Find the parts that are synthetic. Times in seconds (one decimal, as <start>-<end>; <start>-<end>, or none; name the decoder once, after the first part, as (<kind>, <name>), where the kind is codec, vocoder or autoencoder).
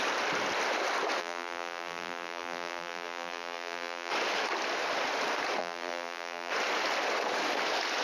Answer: 1.2-4.1 (vocoder, BigVGAN v2); 5.6-6.5